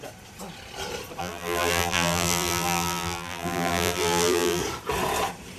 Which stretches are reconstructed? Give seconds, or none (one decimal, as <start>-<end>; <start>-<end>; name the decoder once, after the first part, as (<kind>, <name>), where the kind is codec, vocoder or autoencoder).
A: 1.2-4.6 (vocoder, BigVGAN v2)